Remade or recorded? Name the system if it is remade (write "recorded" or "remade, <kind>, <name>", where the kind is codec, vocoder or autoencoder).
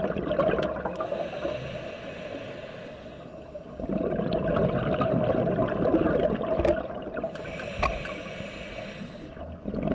recorded